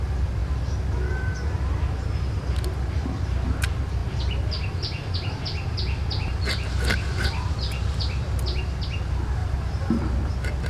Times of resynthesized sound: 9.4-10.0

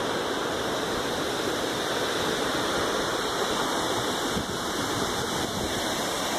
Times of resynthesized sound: none

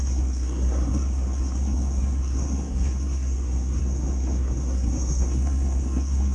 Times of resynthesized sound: 0.0-6.3

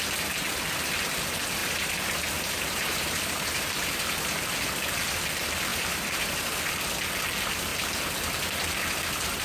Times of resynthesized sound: 1.6-4.4; 5.7-6.7

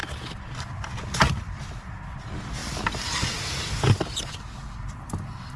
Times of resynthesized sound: none

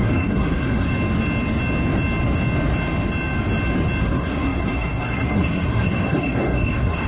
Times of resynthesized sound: 0.0-0.9; 4.0-7.1

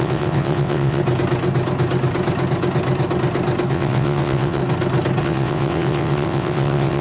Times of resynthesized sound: 0.0-1.0; 3.7-4.6; 5.2-7.0